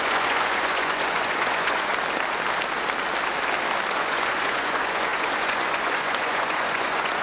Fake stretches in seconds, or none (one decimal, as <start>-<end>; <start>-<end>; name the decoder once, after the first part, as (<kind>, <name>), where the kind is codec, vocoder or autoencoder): 0.0-1.9 (vocoder, Vocos); 3.9-7.2